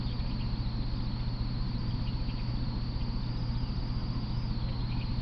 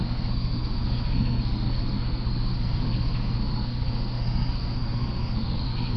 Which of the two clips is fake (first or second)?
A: second